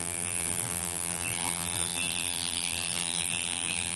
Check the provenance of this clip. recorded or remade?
remade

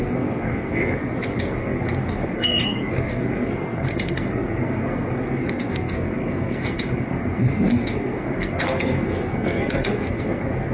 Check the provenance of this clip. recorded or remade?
remade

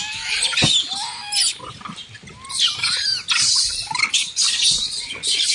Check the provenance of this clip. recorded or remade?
remade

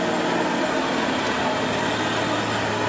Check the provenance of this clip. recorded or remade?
recorded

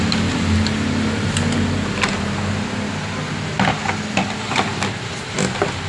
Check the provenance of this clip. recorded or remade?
recorded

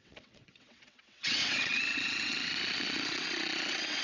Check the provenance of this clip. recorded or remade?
remade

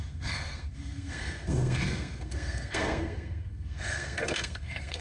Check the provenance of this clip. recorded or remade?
remade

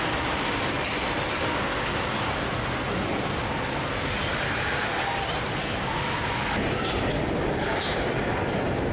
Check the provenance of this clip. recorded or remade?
recorded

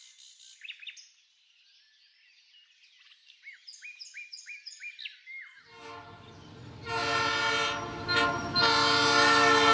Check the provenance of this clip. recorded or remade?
recorded